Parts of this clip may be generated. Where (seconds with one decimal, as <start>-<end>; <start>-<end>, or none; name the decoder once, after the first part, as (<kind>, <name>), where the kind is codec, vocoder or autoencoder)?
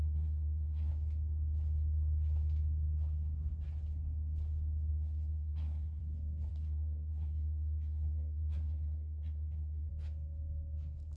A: 0.0-0.9 (codec, SNAC); 4.9-6.0; 6.5-9.9